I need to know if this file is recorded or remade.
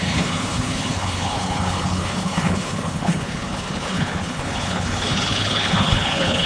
remade